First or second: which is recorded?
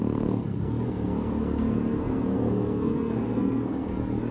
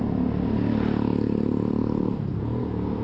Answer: second